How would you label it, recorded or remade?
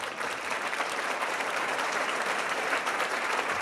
remade